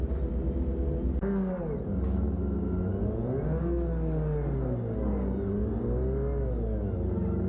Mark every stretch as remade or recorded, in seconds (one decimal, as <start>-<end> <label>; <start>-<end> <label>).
0.0-7.5 recorded